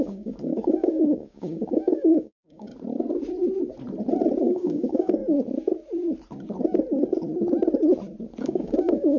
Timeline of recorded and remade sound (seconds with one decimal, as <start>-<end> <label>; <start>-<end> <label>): 0.0-2.7 remade; 2.7-4.4 recorded; 4.4-5.2 remade; 5.2-8.4 recorded; 8.4-9.2 remade